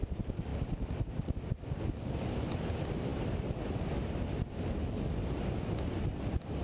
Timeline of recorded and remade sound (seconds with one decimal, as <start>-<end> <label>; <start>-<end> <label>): 0.0-6.6 recorded